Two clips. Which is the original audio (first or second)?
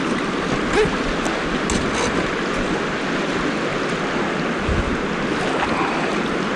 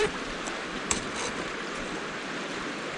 first